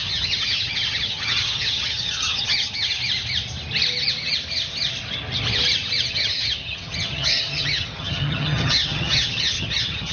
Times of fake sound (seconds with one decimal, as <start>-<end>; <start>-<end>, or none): 0.0-3.0; 6.1-10.1